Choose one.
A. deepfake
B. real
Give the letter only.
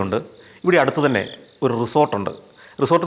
B